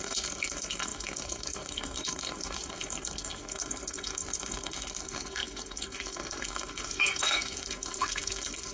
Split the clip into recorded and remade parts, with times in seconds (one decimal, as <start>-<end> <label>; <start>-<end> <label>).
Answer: 0.0-8.7 remade